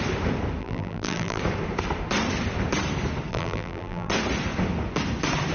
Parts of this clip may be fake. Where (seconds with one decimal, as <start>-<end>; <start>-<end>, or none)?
0.6-1.4; 3.3-4.1

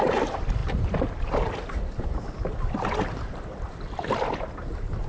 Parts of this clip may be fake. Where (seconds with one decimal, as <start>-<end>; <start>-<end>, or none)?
none

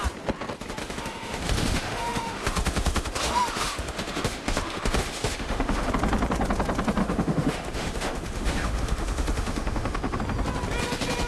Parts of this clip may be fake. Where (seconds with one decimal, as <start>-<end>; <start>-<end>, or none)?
0.8-5.9; 7.0-10.2

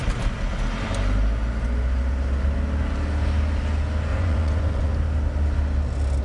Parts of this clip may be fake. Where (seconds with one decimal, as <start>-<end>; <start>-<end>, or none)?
4.1-4.9

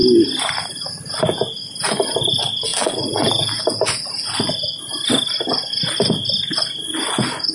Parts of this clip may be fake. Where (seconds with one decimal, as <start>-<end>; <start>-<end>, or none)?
2.7-3.6

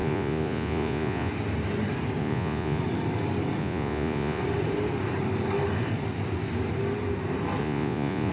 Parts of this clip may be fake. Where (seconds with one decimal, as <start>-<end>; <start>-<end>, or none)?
0.0-1.3; 2.2-2.8; 3.6-4.4; 7.6-8.3

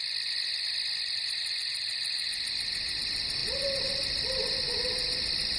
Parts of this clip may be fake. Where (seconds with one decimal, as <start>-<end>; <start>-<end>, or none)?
none